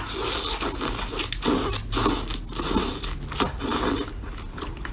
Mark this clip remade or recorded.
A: recorded